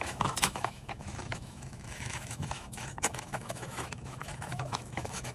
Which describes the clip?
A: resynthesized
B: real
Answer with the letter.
A